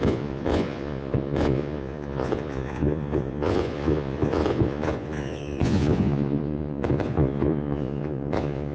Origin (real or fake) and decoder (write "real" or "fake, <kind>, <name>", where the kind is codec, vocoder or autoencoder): fake, vocoder, Vocos